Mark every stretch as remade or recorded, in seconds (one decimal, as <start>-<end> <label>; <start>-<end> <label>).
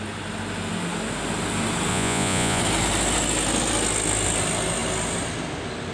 0.0-1.9 recorded; 1.9-2.6 remade; 2.6-5.9 recorded